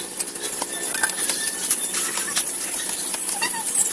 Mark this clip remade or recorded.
recorded